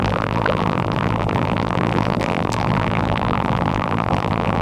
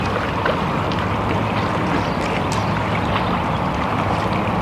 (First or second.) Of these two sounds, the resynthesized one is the first